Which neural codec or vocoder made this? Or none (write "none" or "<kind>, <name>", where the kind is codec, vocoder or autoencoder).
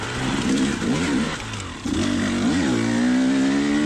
none